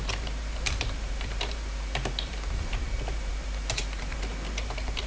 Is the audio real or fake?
fake